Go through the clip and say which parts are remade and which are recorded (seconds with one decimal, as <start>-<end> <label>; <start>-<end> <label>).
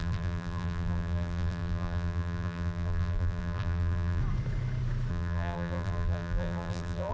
0.0-4.2 remade; 4.2-5.1 recorded; 5.1-7.1 remade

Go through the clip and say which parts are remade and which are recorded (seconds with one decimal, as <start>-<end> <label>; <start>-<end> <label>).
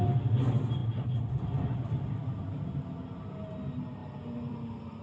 0.0-5.0 recorded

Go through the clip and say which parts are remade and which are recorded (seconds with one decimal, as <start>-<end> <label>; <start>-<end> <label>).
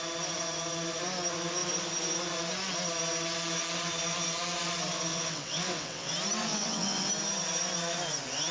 0.0-5.1 recorded; 5.1-6.1 remade; 6.1-6.5 recorded; 6.5-7.1 remade; 7.1-8.5 recorded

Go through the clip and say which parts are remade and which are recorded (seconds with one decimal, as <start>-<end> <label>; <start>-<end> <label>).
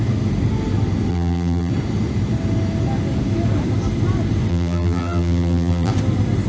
0.0-1.1 recorded; 1.1-1.7 remade; 1.7-4.5 recorded; 4.5-5.9 remade; 5.9-6.5 recorded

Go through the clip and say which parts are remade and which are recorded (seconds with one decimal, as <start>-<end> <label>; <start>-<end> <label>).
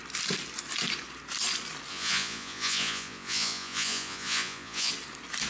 0.0-1.9 recorded; 1.9-4.9 remade; 4.9-5.5 recorded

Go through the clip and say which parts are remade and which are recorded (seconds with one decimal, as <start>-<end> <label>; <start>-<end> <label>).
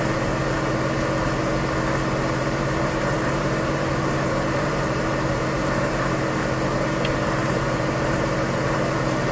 0.0-0.4 remade; 0.4-2.4 recorded; 2.4-9.3 remade